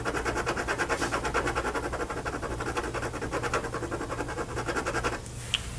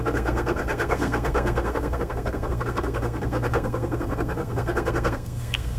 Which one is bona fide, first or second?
first